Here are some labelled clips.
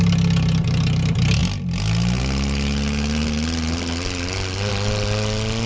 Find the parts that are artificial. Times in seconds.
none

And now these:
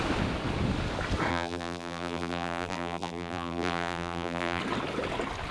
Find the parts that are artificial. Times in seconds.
1.3-4.6 (vocoder, BigVGAN v2)

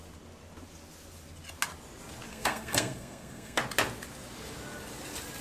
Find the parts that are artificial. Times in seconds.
2.3-3.6 (codec, SNAC)

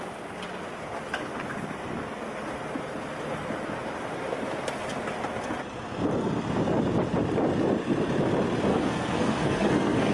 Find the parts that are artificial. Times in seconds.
8.7-10.1 (codec, SNAC)

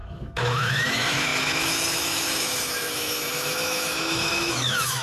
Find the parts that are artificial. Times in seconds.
0.0-5.0 (autoencoder, DAC-VAE)

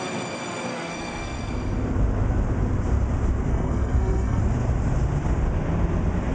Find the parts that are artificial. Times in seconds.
0.7-1.5 (codec, SNAC); 3.5-4.4

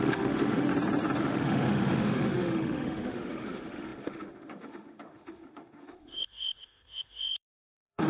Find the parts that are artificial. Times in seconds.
0.0-0.7 (autoencoder, DAC-VAE); 1.2-8.1